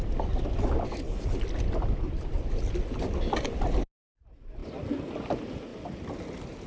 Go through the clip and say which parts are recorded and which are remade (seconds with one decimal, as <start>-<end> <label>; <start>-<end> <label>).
0.0-6.7 recorded